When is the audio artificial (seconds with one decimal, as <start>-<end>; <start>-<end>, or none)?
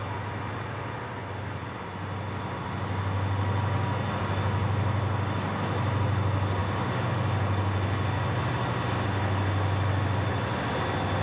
none